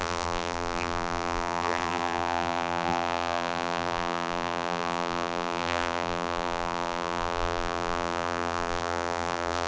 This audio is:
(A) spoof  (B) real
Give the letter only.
A